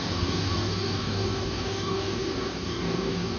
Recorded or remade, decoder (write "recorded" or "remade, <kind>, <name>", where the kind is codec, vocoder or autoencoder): remade, codec, DAC